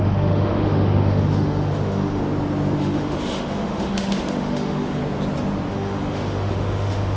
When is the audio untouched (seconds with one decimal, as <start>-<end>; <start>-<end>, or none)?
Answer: 2.2-2.8; 5.0-5.7